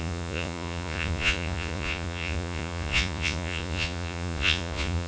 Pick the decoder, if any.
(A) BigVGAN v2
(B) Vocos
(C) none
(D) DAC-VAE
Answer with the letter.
B